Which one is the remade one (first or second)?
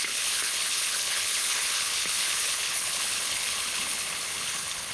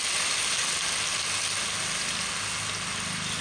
first